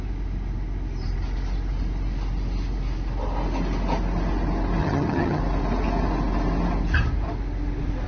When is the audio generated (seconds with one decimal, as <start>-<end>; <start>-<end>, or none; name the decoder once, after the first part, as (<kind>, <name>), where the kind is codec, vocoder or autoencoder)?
4.8-5.4 (vocoder, HiFi-GAN)